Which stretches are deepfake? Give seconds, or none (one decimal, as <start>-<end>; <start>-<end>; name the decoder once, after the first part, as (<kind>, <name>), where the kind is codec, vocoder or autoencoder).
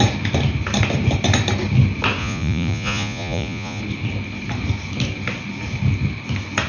2.2-3.8 (vocoder, Vocos)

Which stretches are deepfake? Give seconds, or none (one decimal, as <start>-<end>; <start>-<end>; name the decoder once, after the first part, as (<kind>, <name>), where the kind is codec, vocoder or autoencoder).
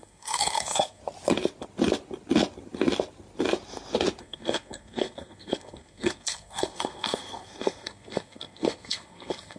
0.0-1.0 (codec, SNAC); 4.2-9.6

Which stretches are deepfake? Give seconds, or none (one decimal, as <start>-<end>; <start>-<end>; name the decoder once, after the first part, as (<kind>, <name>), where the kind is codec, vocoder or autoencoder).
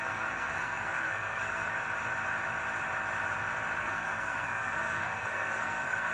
0.0-1.7 (codec, SNAC); 3.8-6.1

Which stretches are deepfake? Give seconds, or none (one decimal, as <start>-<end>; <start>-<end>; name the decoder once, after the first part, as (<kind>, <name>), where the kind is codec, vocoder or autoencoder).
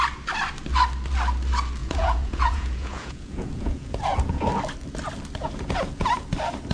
1.8-4.4 (vocoder, Vocos); 5.4-6.1